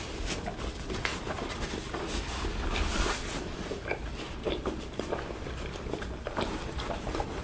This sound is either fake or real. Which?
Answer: real